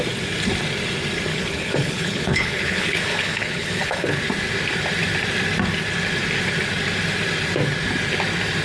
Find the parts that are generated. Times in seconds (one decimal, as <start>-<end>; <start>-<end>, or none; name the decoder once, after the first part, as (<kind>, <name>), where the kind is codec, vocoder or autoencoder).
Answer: 1.3-4.2 (codec, HILCodec)